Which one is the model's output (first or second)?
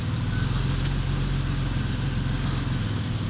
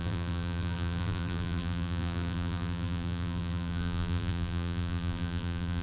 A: second